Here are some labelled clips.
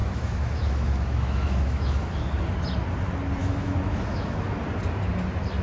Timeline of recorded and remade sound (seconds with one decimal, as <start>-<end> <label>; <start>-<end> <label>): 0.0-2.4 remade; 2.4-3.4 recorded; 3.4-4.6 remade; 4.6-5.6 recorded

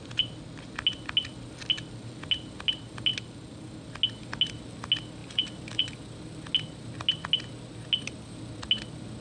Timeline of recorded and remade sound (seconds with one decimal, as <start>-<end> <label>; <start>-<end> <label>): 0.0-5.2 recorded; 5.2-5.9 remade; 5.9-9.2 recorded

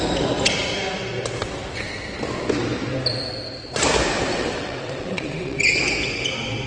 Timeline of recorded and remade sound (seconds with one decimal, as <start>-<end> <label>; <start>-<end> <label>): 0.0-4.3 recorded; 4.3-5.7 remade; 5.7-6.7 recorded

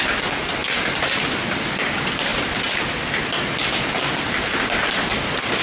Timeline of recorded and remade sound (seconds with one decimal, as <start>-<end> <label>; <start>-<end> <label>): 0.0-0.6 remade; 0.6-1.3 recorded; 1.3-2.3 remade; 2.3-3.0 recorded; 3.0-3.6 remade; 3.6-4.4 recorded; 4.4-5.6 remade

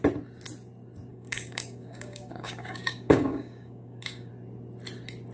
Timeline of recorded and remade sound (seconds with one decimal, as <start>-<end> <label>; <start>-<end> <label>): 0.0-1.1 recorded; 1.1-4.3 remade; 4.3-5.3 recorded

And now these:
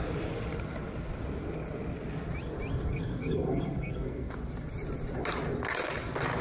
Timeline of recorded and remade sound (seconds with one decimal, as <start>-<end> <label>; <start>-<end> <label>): 0.0-2.9 recorded; 2.9-4.3 remade; 4.3-6.4 recorded